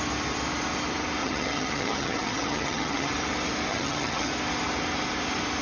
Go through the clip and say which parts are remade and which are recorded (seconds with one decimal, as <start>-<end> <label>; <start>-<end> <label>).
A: 0.0-1.2 recorded; 1.2-3.1 remade; 3.1-3.7 recorded; 3.7-4.3 remade; 4.3-5.6 recorded